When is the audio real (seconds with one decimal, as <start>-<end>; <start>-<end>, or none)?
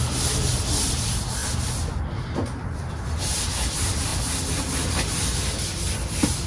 0.0-6.5